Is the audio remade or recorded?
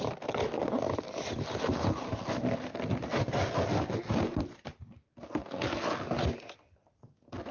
recorded